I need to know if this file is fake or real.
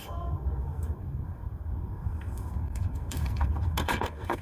fake